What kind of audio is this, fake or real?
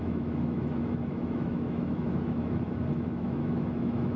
fake